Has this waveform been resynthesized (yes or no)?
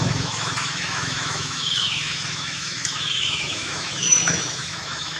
yes